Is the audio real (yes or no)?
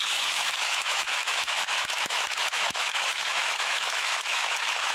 no